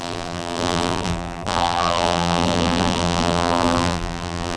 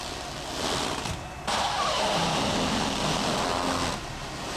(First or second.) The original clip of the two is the second